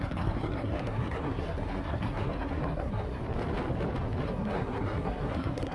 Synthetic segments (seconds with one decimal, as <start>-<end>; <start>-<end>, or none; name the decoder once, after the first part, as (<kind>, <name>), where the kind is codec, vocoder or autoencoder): 0.0-3.2 (codec, SNAC); 4.2-5.7